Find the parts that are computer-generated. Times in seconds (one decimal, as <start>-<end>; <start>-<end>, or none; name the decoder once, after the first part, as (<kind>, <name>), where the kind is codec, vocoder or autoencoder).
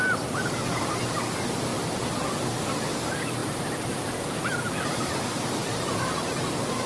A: none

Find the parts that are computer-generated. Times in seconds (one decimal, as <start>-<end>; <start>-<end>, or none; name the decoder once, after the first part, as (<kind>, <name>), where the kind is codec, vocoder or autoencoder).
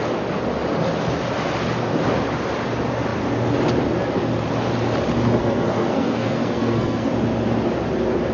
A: 5.4-7.1 (codec, SNAC)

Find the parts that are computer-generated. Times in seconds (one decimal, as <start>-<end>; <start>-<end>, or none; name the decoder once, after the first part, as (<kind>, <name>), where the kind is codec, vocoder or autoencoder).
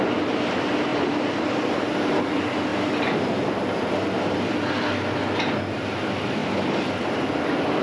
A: 0.9-1.5 (vocoder, BigVGAN v2); 6.4-7.8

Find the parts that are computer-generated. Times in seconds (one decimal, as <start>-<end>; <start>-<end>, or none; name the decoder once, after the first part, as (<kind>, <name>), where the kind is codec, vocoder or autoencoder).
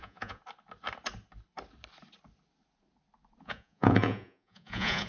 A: 0.0-0.4 (vocoder, Vocos); 3.4-5.1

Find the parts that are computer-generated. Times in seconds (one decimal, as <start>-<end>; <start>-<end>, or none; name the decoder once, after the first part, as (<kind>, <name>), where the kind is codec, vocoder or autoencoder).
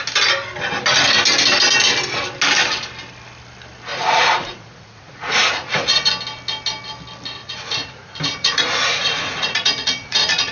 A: 3.9-6.1 (vocoder, Vocos); 7.4-10.5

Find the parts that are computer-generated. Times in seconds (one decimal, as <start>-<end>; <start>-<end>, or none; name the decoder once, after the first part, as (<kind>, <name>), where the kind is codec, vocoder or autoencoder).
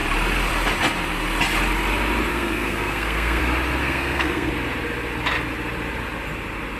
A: 2.3-3.4 (codec, SNAC); 3.8-4.5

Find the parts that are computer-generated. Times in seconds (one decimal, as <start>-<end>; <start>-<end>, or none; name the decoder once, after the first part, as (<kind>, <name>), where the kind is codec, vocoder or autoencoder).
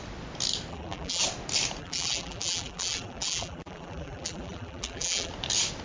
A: 0.7-1.2 (vocoder, BigVGAN v2); 1.8-5.3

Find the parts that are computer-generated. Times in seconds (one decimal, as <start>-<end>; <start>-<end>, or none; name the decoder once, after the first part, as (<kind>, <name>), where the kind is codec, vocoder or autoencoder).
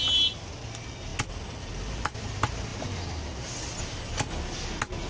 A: none